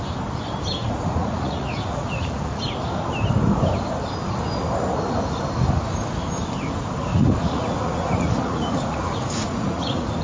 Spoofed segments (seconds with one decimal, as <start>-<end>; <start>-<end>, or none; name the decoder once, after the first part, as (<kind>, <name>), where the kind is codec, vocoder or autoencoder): 0.8-2.6 (vocoder, Vocos); 7.1-10.2